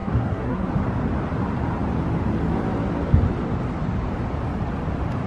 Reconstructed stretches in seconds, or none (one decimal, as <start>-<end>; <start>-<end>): 0.0-0.7